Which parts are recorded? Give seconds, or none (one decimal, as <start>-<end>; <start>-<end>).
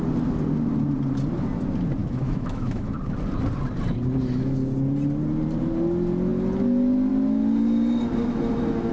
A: 0.0-2.0; 3.0-8.9